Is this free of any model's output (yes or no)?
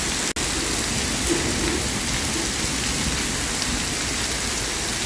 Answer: yes